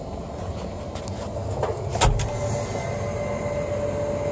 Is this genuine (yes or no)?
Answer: yes